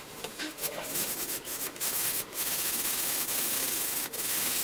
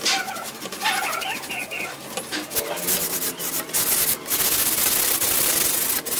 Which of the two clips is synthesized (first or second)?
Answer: first